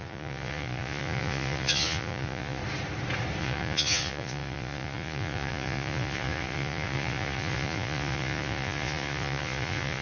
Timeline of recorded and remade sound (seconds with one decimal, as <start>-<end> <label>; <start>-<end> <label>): 0.0-2.6 remade; 2.6-3.4 recorded; 3.4-10.0 remade